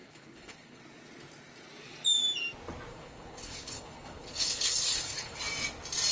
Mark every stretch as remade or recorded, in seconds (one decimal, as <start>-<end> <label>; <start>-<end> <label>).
0.0-0.8 remade; 0.8-2.9 recorded; 2.9-5.4 remade; 5.4-6.1 recorded